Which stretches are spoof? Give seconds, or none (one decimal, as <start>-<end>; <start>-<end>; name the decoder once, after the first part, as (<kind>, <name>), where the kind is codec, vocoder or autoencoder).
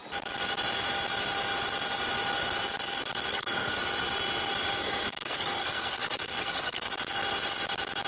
3.3-3.8 (codec, SNAC); 4.8-6.9